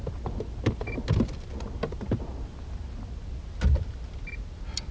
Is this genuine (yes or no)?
yes